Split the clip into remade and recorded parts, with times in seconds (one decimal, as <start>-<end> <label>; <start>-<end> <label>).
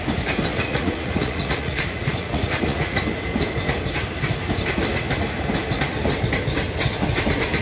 0.0-0.5 recorded; 0.5-3.0 remade; 3.0-7.6 recorded